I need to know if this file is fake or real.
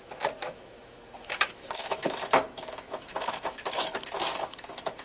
fake